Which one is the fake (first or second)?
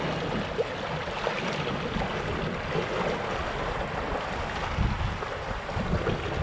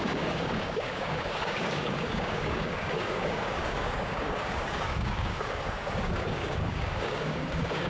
second